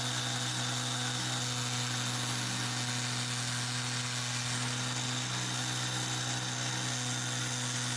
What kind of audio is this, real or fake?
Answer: real